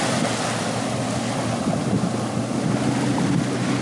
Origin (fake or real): real